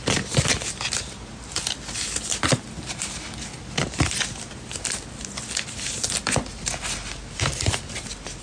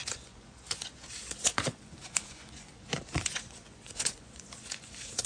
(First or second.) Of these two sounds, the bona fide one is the first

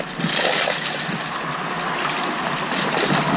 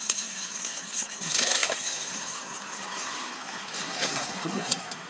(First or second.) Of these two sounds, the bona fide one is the first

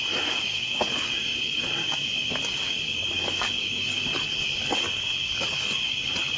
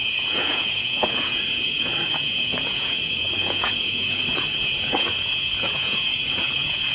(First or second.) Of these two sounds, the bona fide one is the first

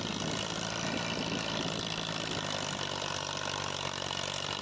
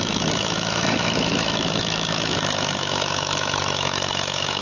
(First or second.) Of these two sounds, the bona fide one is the first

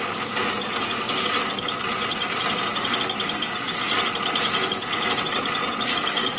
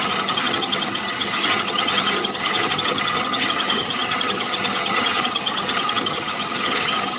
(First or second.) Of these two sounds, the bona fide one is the first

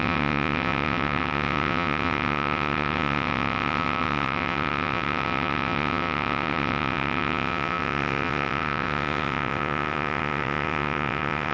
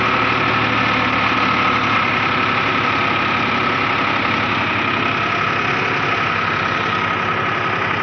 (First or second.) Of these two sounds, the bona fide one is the second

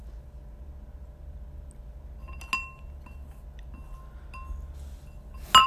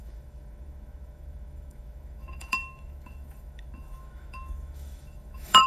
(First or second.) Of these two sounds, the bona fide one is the first